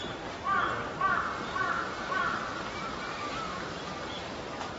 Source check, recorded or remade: recorded